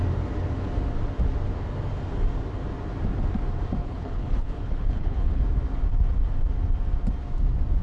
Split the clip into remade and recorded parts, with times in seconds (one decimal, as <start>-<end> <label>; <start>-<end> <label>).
0.0-3.8 recorded; 3.8-5.4 remade; 5.4-7.8 recorded